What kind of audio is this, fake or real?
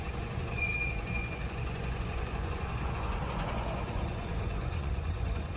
fake